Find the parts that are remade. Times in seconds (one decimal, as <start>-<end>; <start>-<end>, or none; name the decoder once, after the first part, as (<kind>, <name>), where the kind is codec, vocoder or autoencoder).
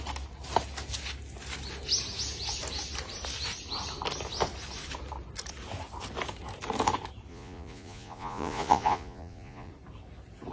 7.3-9.7 (vocoder, Vocos)